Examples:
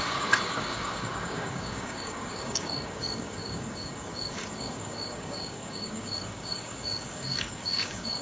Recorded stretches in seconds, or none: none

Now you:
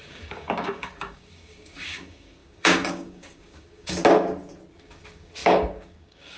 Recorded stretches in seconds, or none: 4.0-4.8

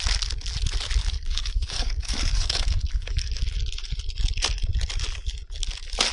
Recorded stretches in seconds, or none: 0.0-1.0; 3.3-6.1

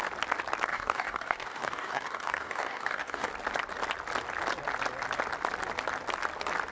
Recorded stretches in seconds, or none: 0.0-0.7; 3.3-6.7

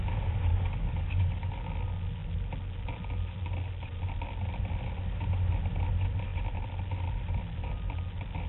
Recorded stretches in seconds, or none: 0.0-0.5; 1.5-8.5

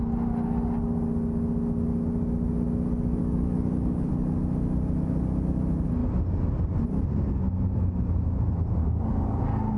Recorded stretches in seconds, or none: 0.0-3.2; 4.1-8.8; 9.4-9.8

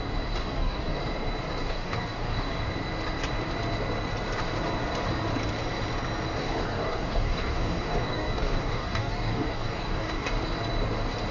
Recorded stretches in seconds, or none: 0.0-0.4; 1.0-1.6; 2.7-6.4; 10.4-11.3

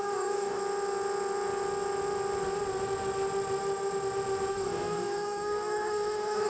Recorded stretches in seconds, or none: 0.6-4.5